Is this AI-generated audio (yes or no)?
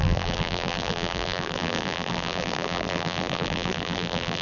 yes